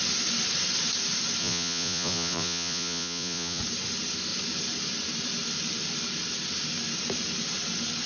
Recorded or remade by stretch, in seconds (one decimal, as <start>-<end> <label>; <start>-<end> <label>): 0.0-1.4 recorded; 1.4-3.6 remade; 3.6-8.1 recorded